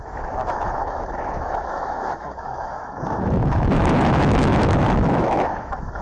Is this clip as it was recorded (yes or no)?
no